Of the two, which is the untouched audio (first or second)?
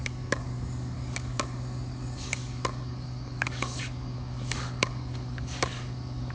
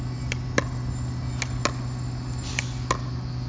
second